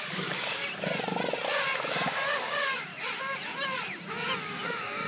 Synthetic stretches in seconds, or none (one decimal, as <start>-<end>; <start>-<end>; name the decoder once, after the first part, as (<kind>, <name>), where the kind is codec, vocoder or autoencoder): 0.0-0.6 (codec, DAC); 1.9-2.9; 4.4-5.1